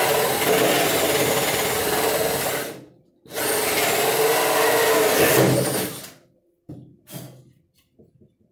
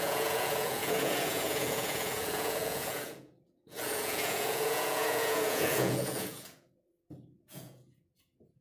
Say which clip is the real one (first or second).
first